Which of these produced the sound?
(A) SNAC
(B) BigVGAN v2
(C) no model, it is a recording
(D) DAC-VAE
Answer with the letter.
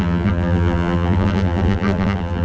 B